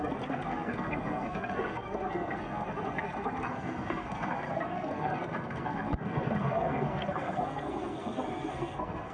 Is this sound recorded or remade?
remade